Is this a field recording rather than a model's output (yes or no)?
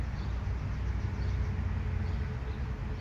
yes